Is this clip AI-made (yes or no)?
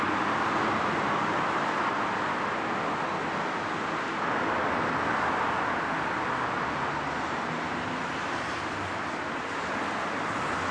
no